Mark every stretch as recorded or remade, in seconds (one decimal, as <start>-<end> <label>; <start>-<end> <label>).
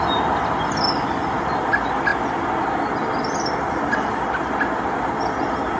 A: 0.0-5.8 recorded